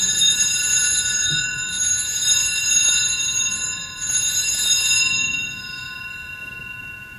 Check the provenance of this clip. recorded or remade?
remade